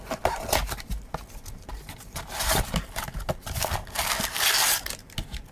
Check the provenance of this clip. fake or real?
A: real